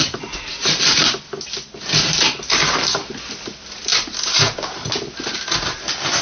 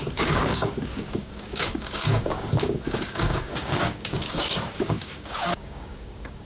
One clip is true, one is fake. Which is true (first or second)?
first